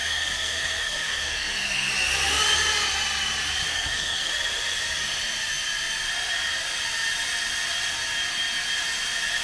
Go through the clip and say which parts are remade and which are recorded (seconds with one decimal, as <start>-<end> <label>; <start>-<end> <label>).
0.0-1.9 remade; 1.9-3.7 recorded; 3.7-4.3 remade; 4.3-9.4 recorded